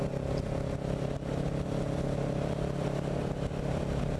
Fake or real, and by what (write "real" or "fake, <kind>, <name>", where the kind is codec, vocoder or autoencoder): real